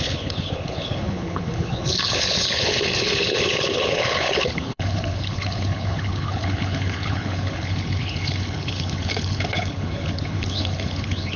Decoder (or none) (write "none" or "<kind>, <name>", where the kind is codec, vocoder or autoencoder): codec, HILCodec